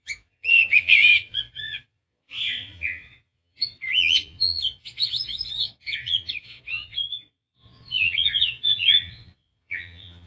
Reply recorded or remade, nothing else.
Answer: remade